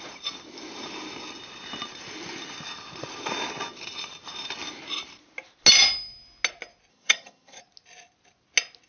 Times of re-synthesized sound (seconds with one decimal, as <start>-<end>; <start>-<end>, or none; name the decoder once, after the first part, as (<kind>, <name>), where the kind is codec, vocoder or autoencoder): 6.9-7.6 (vocoder, HiFi-GAN)